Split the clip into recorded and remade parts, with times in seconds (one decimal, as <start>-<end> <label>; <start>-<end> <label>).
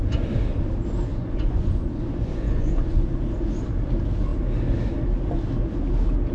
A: 0.0-1.1 recorded; 1.1-3.1 remade; 3.1-6.3 recorded